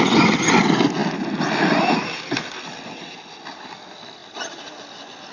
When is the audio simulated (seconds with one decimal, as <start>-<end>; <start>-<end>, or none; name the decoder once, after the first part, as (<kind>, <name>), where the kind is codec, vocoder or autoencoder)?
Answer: none